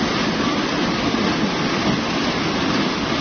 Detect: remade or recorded recorded